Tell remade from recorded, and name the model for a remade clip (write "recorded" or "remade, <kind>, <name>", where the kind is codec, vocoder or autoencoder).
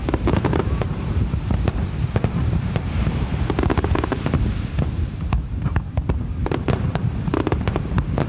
remade, vocoder, BigVGAN v2